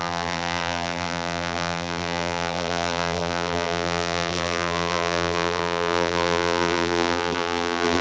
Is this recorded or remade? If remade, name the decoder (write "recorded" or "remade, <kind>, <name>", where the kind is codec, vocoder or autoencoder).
remade, vocoder, BigVGAN v2